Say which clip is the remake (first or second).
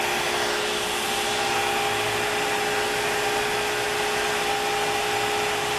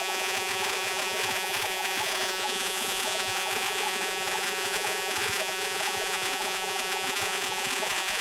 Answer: second